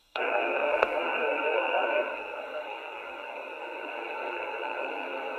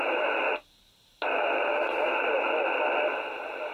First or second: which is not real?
first